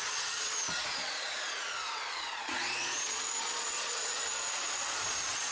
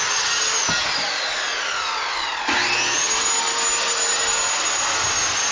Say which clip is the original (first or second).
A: second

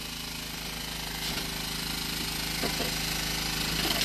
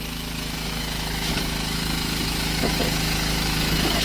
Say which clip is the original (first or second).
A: first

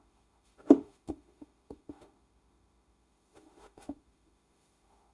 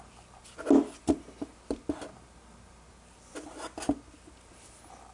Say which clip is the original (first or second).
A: second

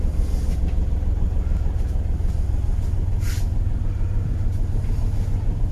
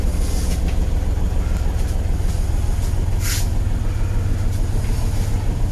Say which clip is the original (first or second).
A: second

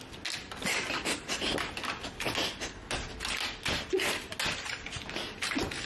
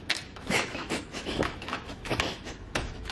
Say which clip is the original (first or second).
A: first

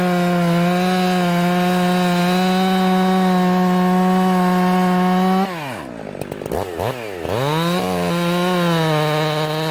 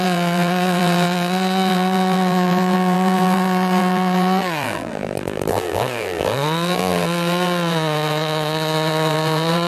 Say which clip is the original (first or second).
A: first